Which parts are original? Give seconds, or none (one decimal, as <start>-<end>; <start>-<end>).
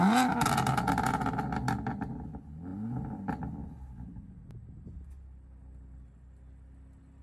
0.0-7.2